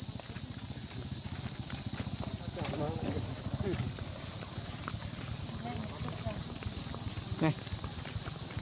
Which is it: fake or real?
real